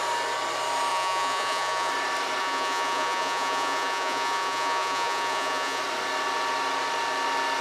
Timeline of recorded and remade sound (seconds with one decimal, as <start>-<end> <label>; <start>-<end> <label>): 0.0-0.9 recorded; 0.9-1.9 remade; 1.9-2.4 recorded; 2.4-5.8 remade; 5.8-7.6 recorded